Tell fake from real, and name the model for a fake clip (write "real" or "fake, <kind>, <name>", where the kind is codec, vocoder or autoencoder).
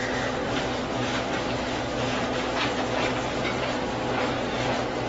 real